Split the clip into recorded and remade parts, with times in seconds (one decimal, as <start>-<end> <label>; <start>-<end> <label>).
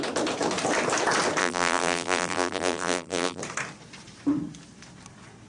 0.0-1.4 recorded; 1.4-3.4 remade; 3.4-5.5 recorded